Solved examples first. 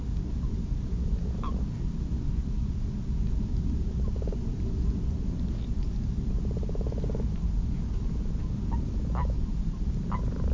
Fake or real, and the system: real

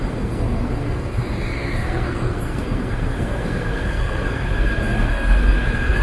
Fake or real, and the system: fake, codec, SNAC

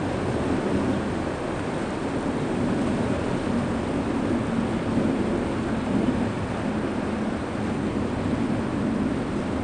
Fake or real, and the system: real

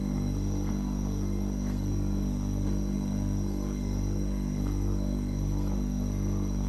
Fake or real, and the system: fake, codec, SNAC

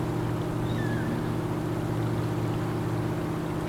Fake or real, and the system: real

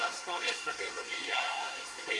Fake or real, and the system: fake, codec, SNAC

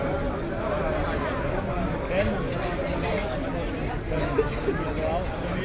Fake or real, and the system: real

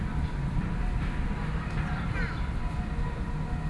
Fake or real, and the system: real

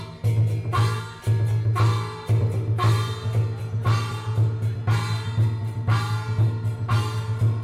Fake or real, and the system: real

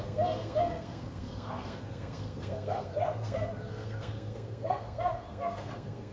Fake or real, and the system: fake, codec, SNAC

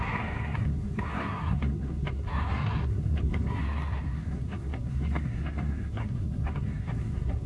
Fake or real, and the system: fake, codec, SNAC